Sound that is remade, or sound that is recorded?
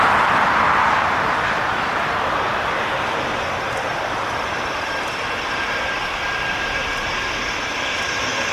remade